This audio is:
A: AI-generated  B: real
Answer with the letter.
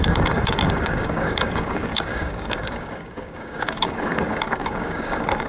A